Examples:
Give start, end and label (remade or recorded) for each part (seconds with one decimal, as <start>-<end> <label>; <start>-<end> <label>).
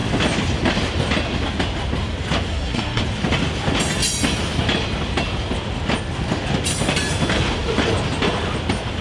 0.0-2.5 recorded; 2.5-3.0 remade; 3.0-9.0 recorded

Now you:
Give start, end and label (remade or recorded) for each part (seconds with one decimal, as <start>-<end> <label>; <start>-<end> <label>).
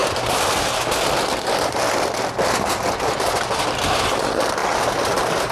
0.0-5.5 recorded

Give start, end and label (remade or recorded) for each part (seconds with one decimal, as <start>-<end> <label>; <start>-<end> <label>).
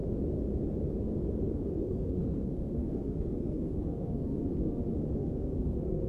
0.0-1.8 recorded; 1.8-4.4 remade; 4.4-5.2 recorded; 5.2-6.1 remade